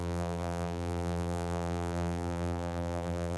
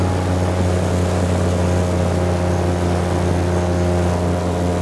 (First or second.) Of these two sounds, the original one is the second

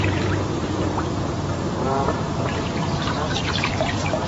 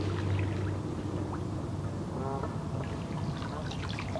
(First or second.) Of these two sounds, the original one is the second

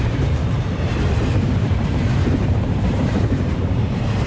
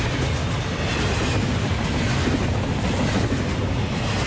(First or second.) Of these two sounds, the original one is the second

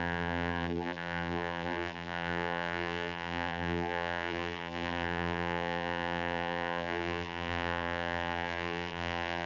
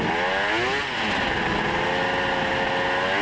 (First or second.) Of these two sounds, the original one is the second